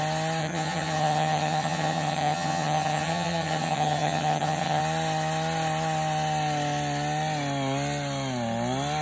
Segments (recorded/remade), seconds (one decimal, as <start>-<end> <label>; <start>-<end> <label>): 0.0-0.4 recorded; 0.4-4.8 remade; 4.8-9.0 recorded